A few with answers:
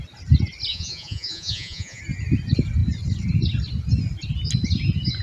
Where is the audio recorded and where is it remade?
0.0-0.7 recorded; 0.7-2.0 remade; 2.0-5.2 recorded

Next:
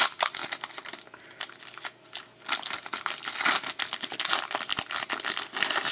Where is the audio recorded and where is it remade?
0.0-5.9 recorded

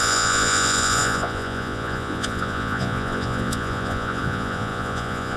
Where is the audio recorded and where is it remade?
0.0-5.4 remade

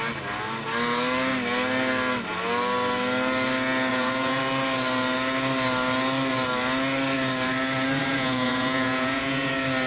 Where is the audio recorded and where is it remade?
0.0-3.9 recorded; 3.9-4.4 remade; 4.4-8.0 recorded; 8.0-9.5 remade; 9.5-9.9 recorded

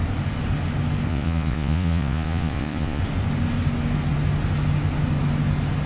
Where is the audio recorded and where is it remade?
0.0-1.1 recorded; 1.1-3.0 remade; 3.0-5.9 recorded

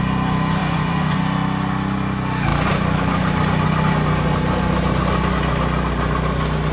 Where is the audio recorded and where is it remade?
0.0-0.6 recorded; 0.6-1.2 remade; 1.2-6.7 recorded